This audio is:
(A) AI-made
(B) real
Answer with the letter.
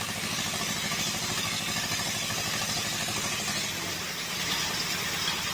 B